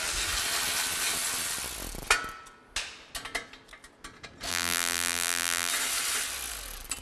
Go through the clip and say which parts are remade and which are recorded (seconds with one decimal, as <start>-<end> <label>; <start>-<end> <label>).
0.0-4.5 recorded; 4.5-5.7 remade; 5.7-7.0 recorded

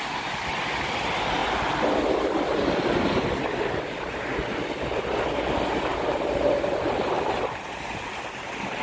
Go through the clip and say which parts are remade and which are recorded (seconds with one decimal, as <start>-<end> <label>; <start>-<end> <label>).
0.0-5.9 recorded; 5.9-8.1 remade; 8.1-8.8 recorded